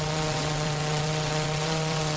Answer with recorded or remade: remade